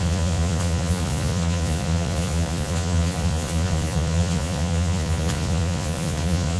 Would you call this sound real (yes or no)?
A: no